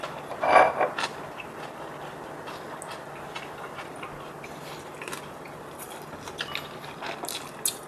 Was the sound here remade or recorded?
recorded